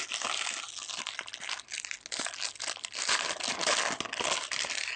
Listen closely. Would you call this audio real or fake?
real